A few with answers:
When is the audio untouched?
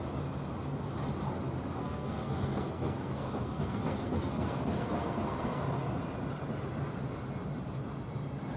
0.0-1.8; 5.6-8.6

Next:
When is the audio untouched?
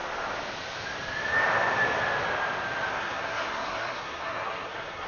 0.0-2.9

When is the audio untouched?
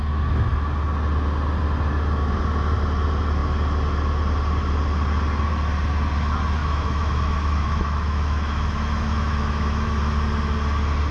0.0-6.6; 10.0-11.1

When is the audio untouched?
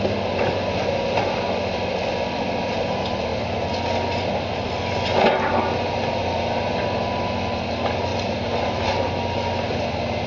0.0-10.3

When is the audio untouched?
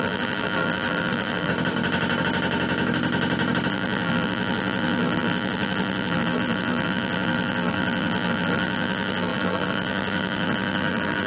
1.5-3.7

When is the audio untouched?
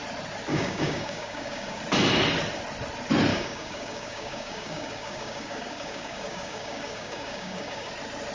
0.0-0.5; 1.8-3.3; 7.9-8.3